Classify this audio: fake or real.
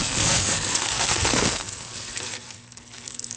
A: fake